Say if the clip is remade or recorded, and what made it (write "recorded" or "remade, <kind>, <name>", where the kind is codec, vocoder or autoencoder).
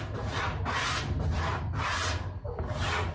recorded